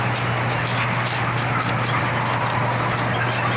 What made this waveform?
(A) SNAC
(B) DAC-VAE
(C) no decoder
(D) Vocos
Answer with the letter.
C